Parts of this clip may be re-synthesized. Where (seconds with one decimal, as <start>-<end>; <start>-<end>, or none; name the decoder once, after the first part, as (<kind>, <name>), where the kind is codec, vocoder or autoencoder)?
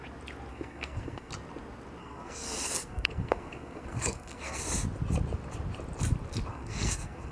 0.5-1.3 (codec, SNAC); 2.0-4.6; 6.5-7.3